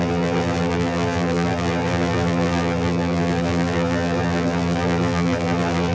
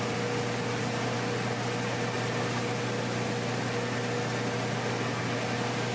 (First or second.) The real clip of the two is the second